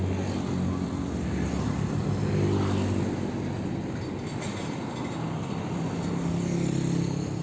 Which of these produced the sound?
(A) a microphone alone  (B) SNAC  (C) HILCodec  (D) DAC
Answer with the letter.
A